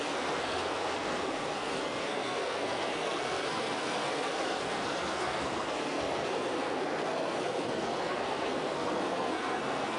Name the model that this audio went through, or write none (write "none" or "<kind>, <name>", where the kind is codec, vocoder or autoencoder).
codec, SNAC